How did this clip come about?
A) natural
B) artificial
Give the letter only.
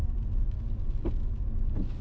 A